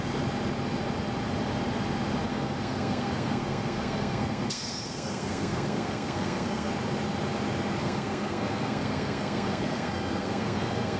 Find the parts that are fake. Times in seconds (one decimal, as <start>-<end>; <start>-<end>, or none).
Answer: 2.3-6.7; 7.8-11.0